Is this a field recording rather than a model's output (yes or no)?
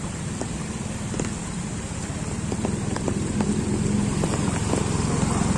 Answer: yes